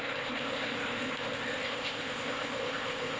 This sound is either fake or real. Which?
fake